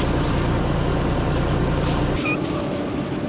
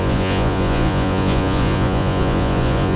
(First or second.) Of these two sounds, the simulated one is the second